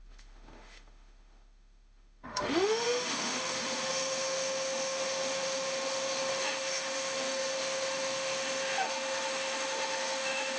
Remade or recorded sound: remade